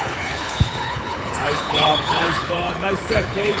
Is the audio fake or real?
fake